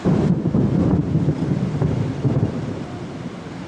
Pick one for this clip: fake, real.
real